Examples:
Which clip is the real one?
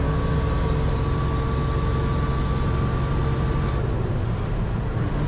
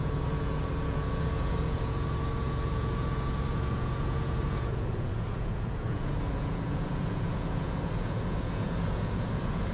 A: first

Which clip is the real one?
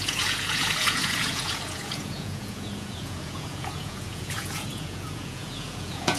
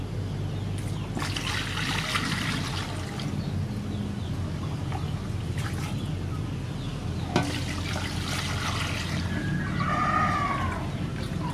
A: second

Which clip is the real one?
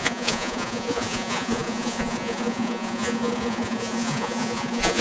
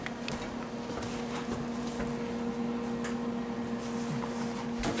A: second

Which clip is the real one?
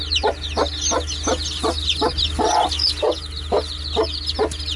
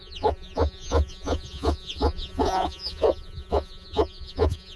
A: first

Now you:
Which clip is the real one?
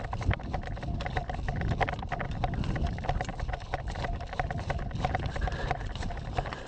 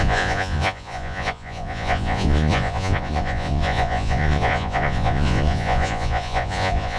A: first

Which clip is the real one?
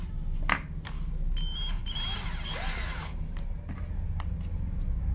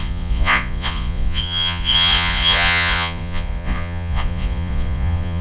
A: first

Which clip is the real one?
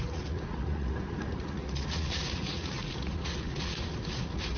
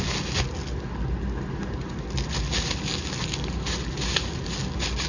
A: second